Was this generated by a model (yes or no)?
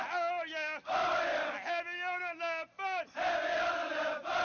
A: no